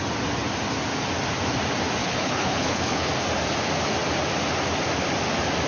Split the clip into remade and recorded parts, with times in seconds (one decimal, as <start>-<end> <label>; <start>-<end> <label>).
0.0-2.0 recorded; 2.0-3.1 remade; 3.1-5.7 recorded